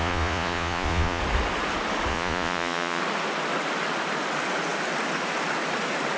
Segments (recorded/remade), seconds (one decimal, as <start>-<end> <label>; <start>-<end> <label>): 0.0-1.2 remade; 1.2-2.1 recorded; 2.1-3.0 remade; 3.0-6.2 recorded